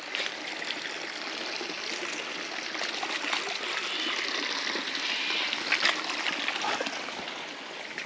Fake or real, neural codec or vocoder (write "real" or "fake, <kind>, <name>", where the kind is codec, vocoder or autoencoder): real